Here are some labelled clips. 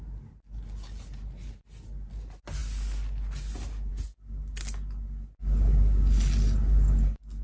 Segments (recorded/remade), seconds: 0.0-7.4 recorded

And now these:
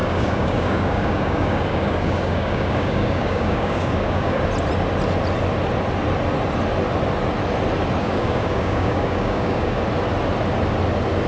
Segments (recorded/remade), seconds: 0.0-4.4 remade; 4.4-8.0 recorded; 8.0-9.8 remade; 9.8-11.3 recorded

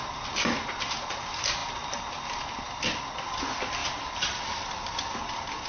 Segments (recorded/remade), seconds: 0.0-3.8 recorded; 3.8-4.6 remade; 4.6-5.7 recorded